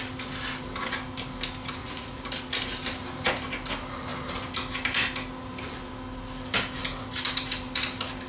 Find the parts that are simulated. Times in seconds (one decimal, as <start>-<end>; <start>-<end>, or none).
1.8-2.3